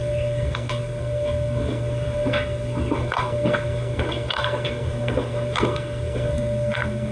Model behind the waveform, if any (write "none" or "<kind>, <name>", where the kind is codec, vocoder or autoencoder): codec, SNAC